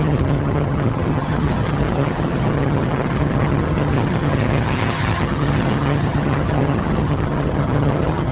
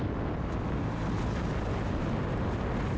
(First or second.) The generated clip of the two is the first